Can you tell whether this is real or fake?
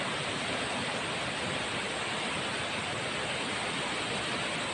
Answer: real